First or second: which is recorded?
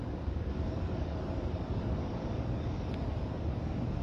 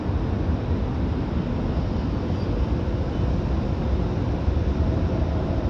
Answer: second